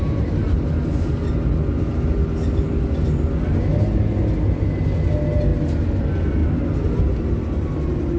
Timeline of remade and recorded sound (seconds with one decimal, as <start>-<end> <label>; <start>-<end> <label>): 0.0-8.2 recorded